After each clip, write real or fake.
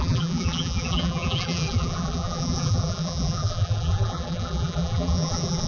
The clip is fake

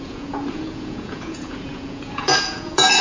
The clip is fake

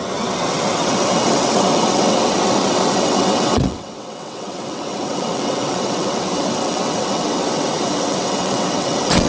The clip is fake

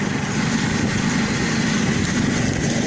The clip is fake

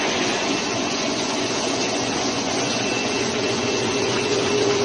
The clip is fake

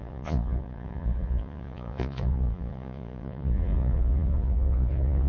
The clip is fake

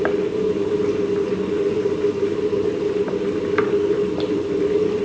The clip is real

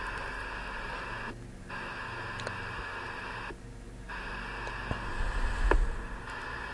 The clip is real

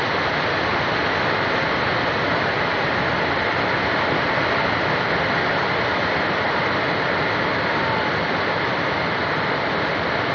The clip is real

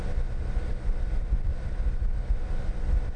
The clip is real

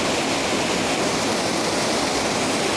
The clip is real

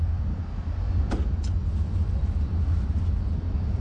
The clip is real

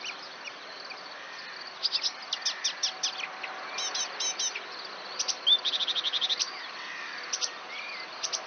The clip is real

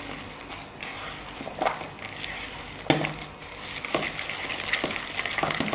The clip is real